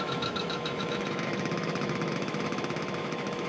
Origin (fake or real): fake